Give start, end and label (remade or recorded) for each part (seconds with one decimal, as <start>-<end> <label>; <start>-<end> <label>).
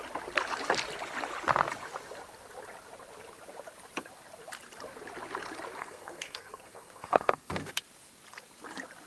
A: 0.0-5.8 recorded; 5.8-7.7 remade; 7.7-9.1 recorded